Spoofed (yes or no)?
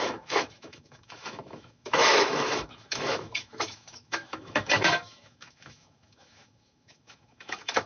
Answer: yes